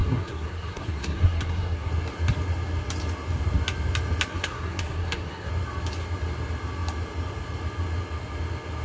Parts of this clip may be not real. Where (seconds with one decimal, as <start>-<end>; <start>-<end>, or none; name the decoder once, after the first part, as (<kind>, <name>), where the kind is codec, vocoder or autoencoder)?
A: 0.0-1.9 (codec, SNAC); 4.3-5.5